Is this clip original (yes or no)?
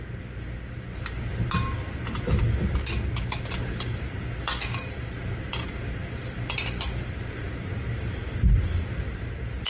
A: yes